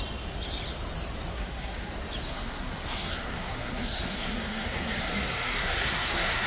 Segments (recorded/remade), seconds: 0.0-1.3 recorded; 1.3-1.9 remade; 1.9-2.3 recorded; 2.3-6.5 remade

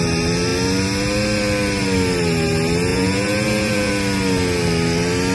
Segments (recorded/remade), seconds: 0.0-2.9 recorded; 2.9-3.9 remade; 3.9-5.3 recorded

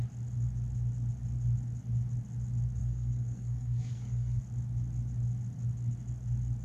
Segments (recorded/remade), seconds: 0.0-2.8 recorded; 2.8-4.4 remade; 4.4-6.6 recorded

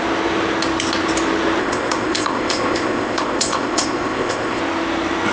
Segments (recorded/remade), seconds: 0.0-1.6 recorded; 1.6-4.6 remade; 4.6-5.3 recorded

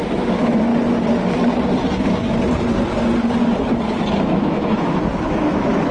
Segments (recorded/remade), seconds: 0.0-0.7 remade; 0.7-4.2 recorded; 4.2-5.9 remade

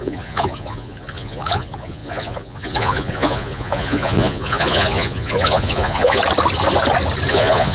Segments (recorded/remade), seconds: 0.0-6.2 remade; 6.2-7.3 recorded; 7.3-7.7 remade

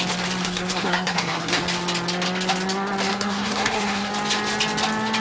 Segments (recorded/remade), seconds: 0.0-0.4 recorded; 0.4-1.6 remade; 1.6-3.1 recorded; 3.1-4.1 remade; 4.1-5.2 recorded

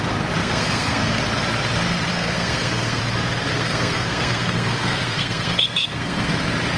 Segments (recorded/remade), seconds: 0.0-0.4 recorded; 0.4-1.2 remade; 1.2-2.1 recorded; 2.1-3.0 remade; 3.0-3.5 recorded; 3.5-6.3 remade; 6.3-6.8 recorded